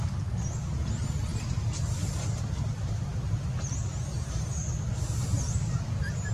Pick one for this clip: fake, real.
real